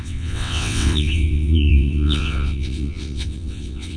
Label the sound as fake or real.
fake